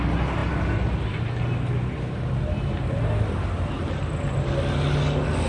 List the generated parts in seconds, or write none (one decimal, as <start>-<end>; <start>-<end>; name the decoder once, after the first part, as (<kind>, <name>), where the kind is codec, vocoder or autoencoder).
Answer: none